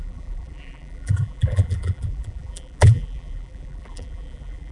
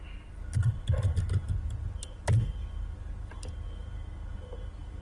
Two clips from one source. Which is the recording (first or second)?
second